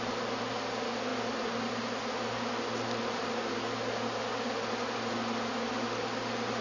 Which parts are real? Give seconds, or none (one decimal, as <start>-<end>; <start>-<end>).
0.0-6.6